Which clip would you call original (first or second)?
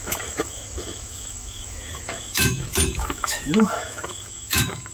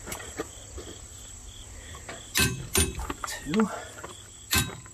second